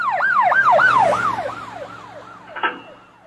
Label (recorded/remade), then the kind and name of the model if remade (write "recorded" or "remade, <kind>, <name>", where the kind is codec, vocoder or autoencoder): recorded